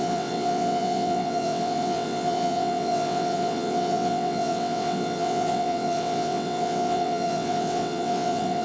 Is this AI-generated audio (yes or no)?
yes